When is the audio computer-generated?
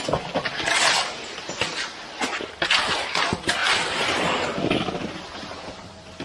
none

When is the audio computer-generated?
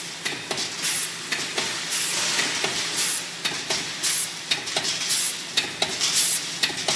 none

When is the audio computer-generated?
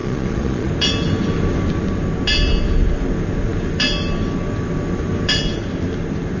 0.0-0.7 (vocoder, Vocos)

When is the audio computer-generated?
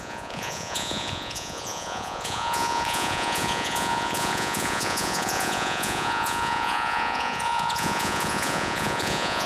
0.0-9.5 (vocoder, Vocos)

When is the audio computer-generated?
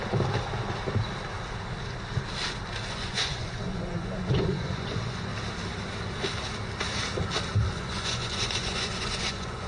2.9-5.3 (vocoder, Vocos); 7.7-9.7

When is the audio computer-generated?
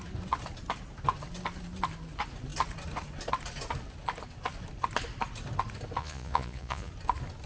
6.0-6.9 (vocoder, Vocos)